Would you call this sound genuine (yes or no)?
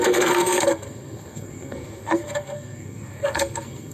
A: no